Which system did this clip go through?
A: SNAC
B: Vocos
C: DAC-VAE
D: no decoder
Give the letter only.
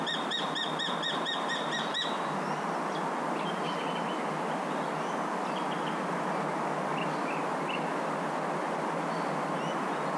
D